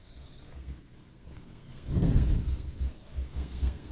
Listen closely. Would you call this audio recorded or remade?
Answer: remade